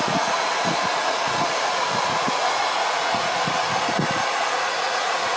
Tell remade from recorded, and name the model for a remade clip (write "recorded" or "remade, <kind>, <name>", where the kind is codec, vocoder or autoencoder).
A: remade, vocoder, Vocos